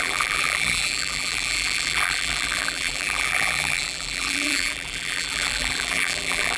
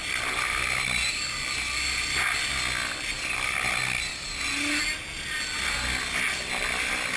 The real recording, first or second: second